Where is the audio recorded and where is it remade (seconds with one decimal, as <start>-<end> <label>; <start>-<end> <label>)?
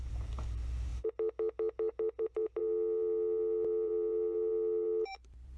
0.0-0.9 remade; 0.9-2.2 recorded; 2.2-5.6 remade